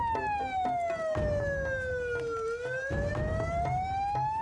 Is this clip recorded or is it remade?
recorded